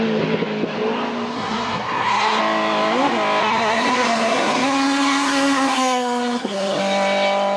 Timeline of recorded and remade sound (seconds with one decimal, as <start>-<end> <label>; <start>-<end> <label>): 0.0-1.3 recorded; 1.3-2.4 remade; 2.4-3.4 recorded; 3.4-6.8 remade; 6.8-7.6 recorded